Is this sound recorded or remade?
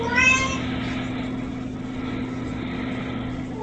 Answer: recorded